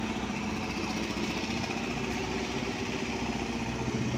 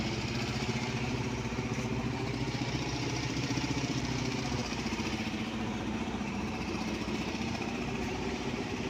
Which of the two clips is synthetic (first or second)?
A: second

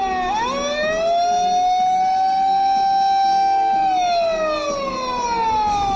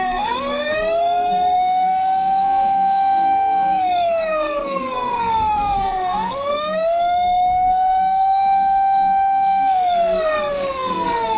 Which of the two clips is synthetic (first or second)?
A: second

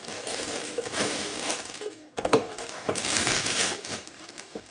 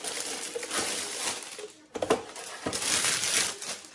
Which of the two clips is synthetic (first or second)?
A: first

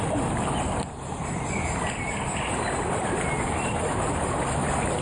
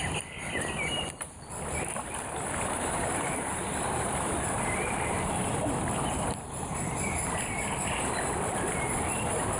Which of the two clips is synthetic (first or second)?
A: second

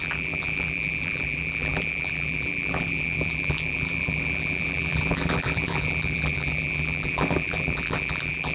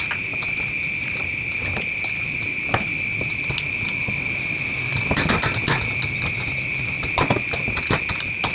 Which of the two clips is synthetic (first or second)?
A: first